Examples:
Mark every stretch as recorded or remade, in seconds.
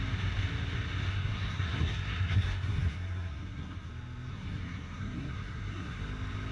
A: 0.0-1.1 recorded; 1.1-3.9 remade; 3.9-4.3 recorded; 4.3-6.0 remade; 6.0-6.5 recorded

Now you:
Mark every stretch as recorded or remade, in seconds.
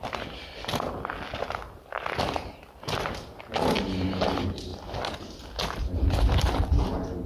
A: 0.0-7.3 recorded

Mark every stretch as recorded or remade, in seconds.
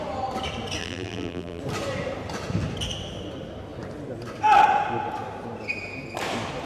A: 0.0-0.8 recorded; 0.8-1.6 remade; 1.6-6.7 recorded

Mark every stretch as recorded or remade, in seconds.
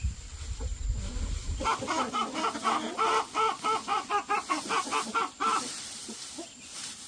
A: 0.0-0.8 remade; 0.8-5.1 recorded; 5.1-7.1 remade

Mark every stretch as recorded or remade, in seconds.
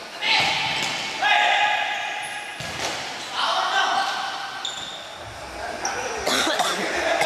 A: 0.0-7.3 recorded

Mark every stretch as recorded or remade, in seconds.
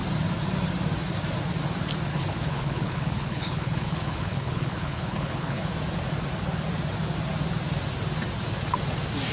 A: 0.0-2.1 recorded; 2.1-5.7 remade; 5.7-9.3 recorded